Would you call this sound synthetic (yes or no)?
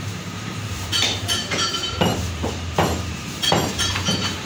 yes